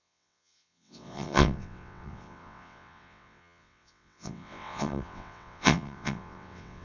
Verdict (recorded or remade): remade